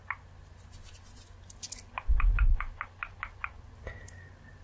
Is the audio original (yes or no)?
yes